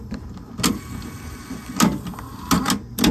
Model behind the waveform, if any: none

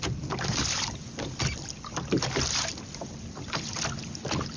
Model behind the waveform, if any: none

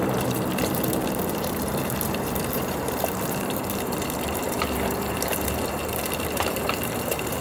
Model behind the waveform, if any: vocoder, BigVGAN v2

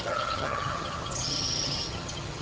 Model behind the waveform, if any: vocoder, HiFi-GAN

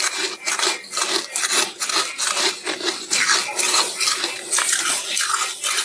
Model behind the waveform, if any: none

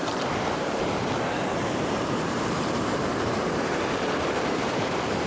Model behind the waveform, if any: vocoder, BigVGAN v2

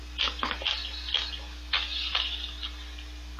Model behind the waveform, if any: none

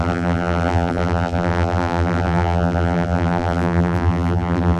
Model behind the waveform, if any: vocoder, BigVGAN v2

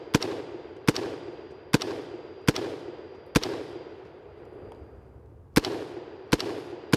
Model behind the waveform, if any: none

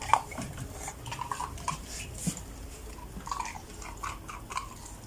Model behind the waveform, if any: none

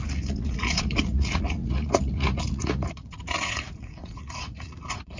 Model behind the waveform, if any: vocoder, Vocos